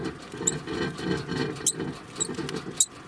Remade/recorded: recorded